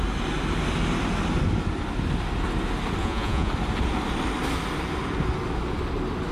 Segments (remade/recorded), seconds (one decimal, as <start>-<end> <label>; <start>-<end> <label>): 0.0-3.0 recorded; 3.0-3.5 remade; 3.5-6.3 recorded